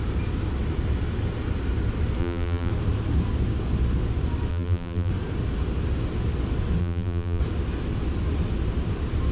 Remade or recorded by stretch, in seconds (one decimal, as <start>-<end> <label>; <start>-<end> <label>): 0.0-2.2 recorded; 2.2-2.7 remade; 2.7-4.5 recorded; 4.5-5.1 remade; 5.1-6.8 recorded; 6.8-7.4 remade; 7.4-9.3 recorded

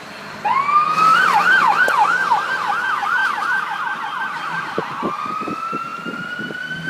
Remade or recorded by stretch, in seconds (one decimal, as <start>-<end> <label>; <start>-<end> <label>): 0.0-3.2 recorded; 3.2-4.6 remade; 4.6-6.9 recorded

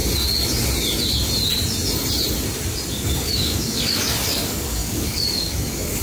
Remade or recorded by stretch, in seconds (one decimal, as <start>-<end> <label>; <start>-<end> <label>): 0.0-2.9 recorded; 2.9-6.0 remade

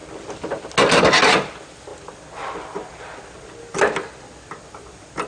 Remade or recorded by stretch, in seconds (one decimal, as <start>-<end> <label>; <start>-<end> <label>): 0.0-5.3 recorded

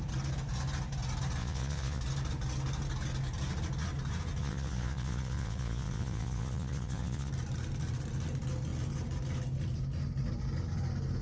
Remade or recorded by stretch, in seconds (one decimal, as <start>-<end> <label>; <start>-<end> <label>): 0.0-1.4 recorded; 1.4-2.0 remade; 2.0-4.4 recorded; 4.4-7.3 remade; 7.3-11.2 recorded

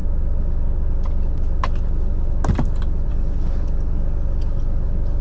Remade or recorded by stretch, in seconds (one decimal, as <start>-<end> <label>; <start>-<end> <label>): 0.0-5.2 recorded